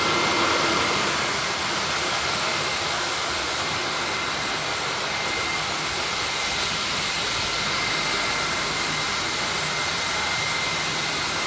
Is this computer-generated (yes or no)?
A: no